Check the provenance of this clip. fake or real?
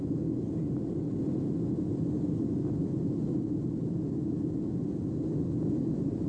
real